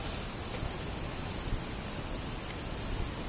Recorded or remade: recorded